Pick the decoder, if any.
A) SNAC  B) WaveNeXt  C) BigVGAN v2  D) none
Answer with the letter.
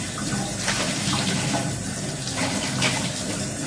D